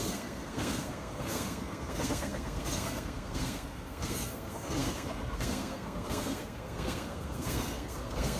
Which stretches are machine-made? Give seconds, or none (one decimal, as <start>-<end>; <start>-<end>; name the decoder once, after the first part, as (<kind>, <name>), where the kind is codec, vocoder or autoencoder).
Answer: 0.0-8.4 (codec, SNAC)